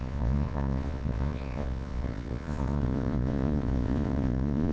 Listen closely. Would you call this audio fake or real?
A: fake